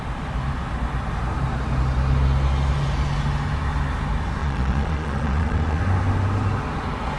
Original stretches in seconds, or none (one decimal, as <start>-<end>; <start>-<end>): 0.0-4.4; 5.8-7.2